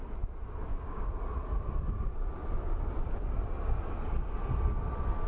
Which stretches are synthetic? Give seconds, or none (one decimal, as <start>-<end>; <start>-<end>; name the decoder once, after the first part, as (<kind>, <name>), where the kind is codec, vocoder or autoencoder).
0.7-1.2 (codec, DAC)